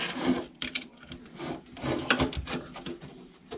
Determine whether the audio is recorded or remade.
remade